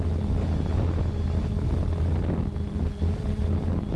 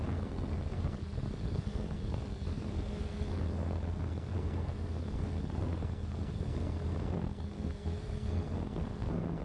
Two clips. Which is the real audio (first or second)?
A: first